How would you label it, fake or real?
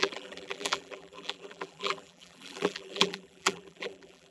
fake